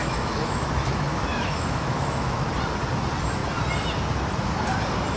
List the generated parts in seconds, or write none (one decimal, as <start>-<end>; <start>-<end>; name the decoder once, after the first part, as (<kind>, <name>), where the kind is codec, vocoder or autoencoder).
0.0-2.5 (autoencoder, DAC-VAE)